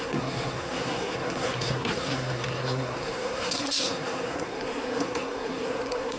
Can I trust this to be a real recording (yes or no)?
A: no